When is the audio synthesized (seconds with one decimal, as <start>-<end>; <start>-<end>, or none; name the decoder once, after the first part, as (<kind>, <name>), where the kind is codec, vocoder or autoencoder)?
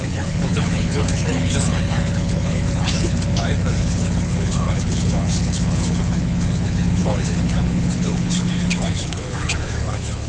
0.0-10.3 (codec, HILCodec)